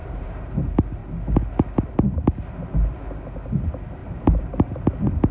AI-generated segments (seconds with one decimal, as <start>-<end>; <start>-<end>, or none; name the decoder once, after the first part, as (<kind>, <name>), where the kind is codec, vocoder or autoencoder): 0.0-0.6 (vocoder, BigVGAN v2); 4.0-4.8